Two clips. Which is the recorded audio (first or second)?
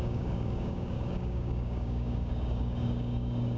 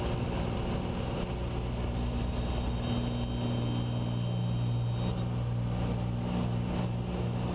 second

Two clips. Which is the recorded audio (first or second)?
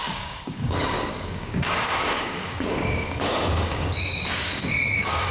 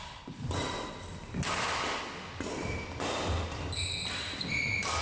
second